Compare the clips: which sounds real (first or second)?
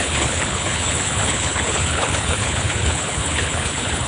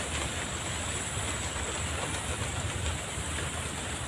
second